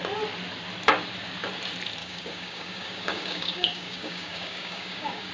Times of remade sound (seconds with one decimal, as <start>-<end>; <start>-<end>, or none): 2.0-5.3